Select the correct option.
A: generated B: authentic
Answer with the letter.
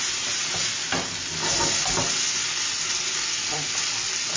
B